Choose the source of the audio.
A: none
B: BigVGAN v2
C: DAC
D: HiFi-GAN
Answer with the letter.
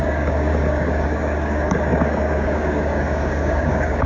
C